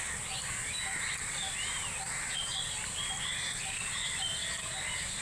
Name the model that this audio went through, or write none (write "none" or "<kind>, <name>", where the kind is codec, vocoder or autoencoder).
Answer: none